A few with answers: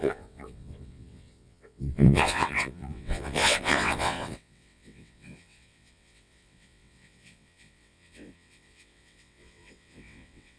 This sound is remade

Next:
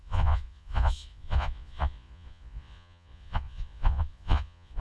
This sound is remade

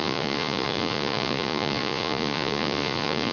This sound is remade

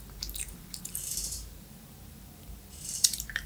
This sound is remade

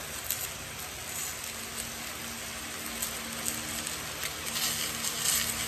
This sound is recorded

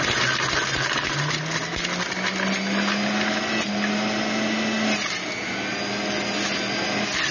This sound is recorded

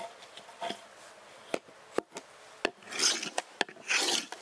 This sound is recorded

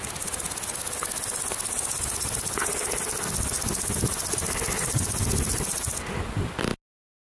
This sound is recorded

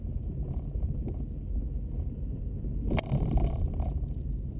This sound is recorded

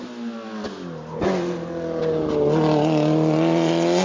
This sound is recorded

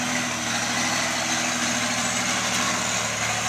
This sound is recorded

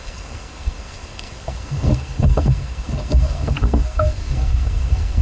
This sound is remade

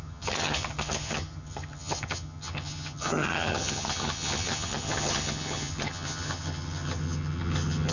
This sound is remade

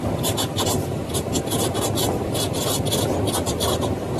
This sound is remade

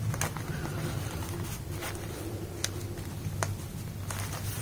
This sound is recorded